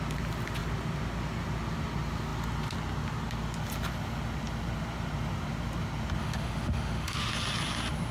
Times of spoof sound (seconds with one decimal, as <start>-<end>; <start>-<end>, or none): 6.2-7.3